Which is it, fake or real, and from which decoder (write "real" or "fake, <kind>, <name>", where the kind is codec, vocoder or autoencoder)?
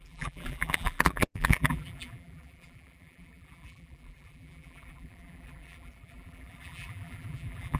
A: fake, vocoder, BigVGAN v2